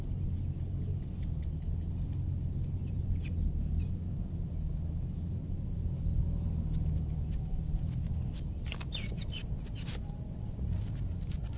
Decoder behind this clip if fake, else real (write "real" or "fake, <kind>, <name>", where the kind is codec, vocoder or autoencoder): real